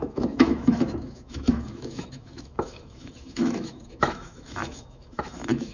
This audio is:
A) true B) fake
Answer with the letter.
B